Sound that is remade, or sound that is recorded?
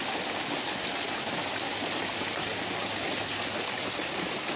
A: remade